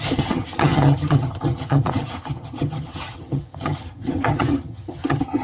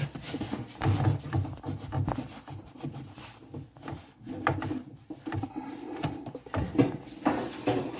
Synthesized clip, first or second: first